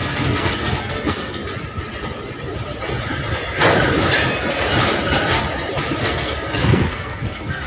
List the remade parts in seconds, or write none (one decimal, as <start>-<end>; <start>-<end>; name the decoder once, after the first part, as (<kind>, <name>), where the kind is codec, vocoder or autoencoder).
0.0-1.4 (codec, SNAC); 6.0-7.7